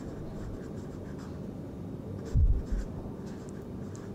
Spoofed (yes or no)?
yes